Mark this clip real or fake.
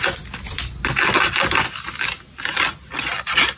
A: real